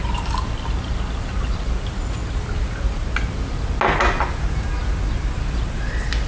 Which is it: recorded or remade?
recorded